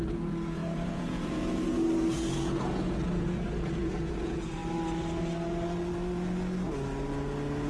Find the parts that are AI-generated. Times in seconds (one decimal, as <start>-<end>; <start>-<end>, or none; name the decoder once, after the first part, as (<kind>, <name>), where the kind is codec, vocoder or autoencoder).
0.0-4.6 (vocoder, Vocos)